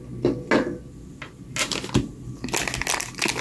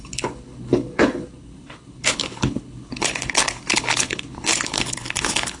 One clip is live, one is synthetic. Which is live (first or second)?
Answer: first